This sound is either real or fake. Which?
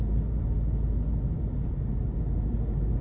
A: real